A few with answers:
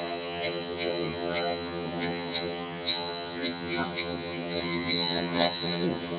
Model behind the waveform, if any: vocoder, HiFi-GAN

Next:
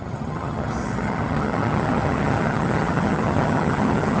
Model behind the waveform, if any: vocoder, HiFi-GAN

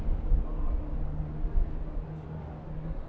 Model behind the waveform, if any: none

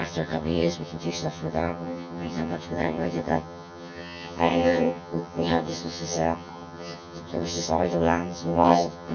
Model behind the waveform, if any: vocoder, HiFi-GAN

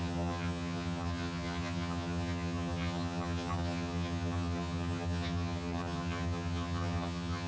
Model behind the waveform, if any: vocoder, HiFi-GAN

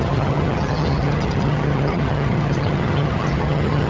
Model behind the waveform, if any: vocoder, HiFi-GAN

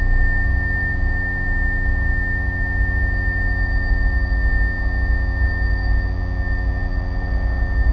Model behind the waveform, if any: none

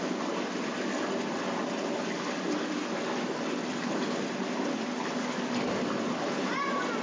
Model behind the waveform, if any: none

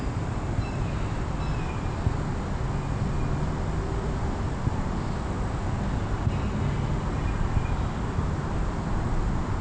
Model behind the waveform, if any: none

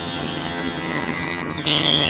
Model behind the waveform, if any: vocoder, HiFi-GAN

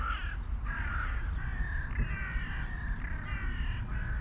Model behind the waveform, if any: none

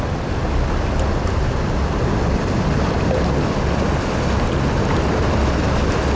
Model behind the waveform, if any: none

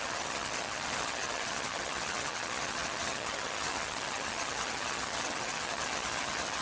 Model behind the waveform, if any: vocoder, HiFi-GAN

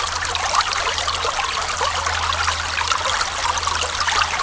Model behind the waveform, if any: none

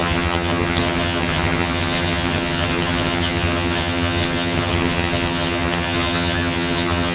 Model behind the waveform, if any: vocoder, HiFi-GAN